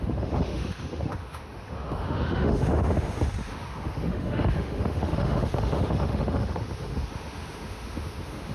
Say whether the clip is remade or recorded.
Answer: remade